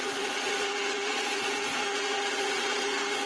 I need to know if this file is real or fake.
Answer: fake